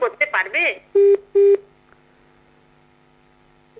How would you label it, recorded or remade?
recorded